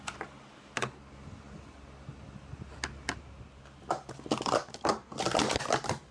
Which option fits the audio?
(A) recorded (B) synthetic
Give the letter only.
A